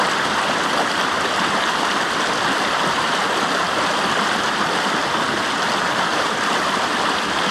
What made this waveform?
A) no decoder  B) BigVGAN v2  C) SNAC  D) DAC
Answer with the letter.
A